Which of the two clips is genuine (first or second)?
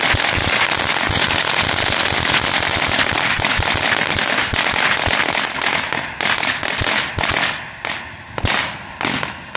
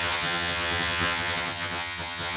first